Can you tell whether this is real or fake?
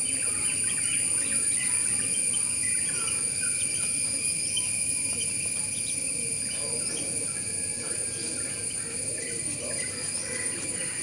real